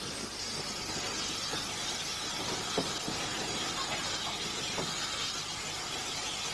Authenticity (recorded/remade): recorded